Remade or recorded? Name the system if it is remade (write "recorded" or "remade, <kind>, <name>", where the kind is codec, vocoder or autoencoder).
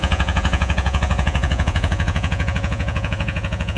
remade, vocoder, Vocos